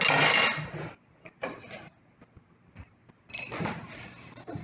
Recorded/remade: recorded